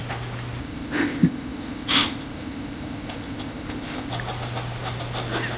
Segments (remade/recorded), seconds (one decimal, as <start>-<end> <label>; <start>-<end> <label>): 0.0-0.6 recorded; 0.6-4.1 remade; 4.1-5.6 recorded

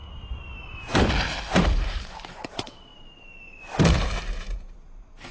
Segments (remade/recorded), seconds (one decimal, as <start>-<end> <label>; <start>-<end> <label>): 0.0-1.6 recorded; 1.6-2.9 remade; 2.9-4.1 recorded; 4.1-5.3 remade

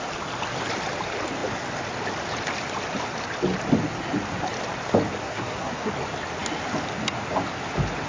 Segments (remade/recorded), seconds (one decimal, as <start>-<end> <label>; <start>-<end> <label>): 0.0-5.2 recorded; 5.2-5.9 remade; 5.9-8.1 recorded

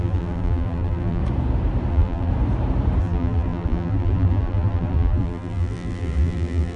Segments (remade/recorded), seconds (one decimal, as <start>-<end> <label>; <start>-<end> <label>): 0.0-1.2 remade; 1.2-1.9 recorded; 1.9-2.3 remade; 2.3-3.0 recorded; 3.0-6.8 remade

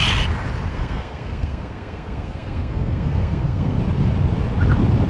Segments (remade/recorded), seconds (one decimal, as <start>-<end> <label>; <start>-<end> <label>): 0.0-0.7 recorded; 0.7-3.8 remade; 3.8-5.1 recorded